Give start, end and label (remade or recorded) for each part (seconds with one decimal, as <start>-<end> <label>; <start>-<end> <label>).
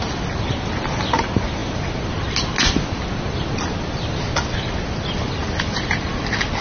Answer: 0.0-6.6 recorded